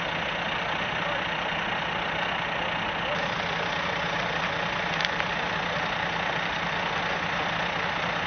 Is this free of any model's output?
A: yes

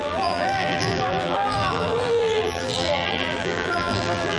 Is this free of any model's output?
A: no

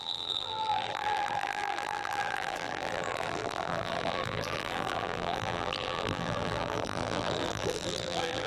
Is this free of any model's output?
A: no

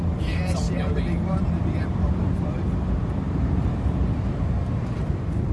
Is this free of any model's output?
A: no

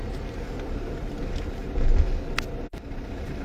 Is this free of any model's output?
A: yes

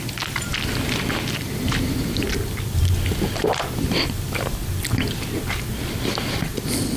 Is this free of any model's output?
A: no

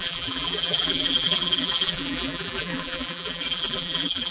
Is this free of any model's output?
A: no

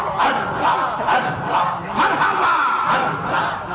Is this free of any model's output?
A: yes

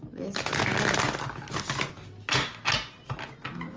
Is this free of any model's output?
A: yes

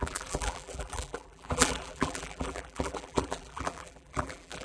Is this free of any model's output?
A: no